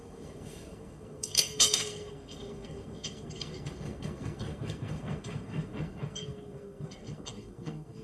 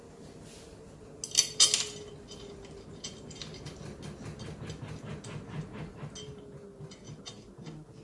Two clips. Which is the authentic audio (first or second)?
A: second